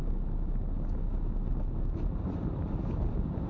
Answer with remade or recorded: recorded